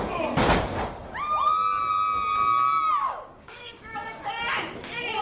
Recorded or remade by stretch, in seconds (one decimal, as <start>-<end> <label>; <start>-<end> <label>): 0.0-3.0 recorded; 3.0-4.3 remade; 4.3-5.2 recorded